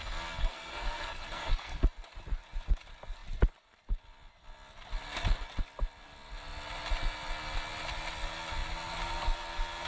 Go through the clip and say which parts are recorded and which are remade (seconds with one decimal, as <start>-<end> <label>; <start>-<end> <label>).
0.0-0.4 recorded; 0.4-1.8 remade; 1.8-9.9 recorded